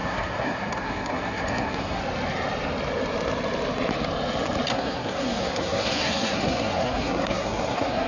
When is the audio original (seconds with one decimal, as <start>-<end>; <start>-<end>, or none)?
2.0-4.7